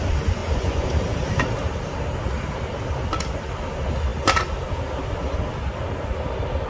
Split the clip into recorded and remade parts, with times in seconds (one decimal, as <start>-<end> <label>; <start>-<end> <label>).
0.0-0.4 recorded; 0.4-0.9 remade; 0.9-6.7 recorded